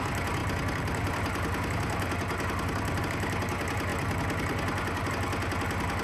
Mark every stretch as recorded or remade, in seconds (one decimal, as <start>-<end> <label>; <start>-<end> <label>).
0.0-6.0 recorded